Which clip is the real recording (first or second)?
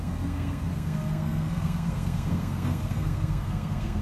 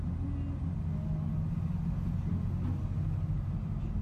second